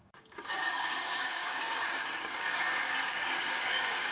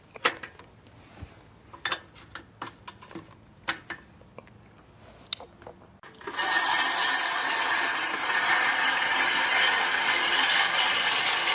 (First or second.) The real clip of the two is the second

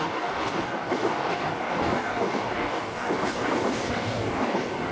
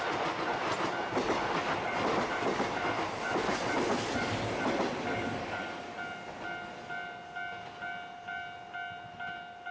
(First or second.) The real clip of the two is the second